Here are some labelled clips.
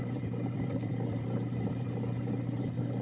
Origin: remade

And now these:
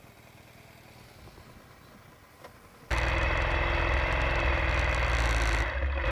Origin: recorded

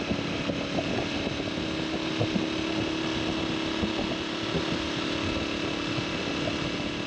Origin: recorded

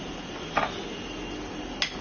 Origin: recorded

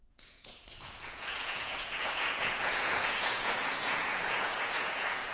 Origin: remade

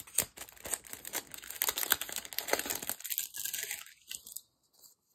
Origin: recorded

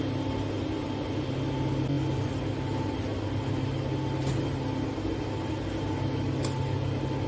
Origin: recorded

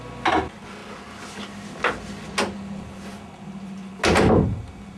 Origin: recorded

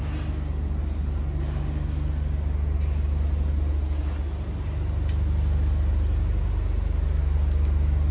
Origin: recorded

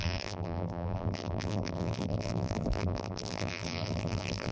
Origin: remade